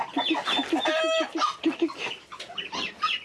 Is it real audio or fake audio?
real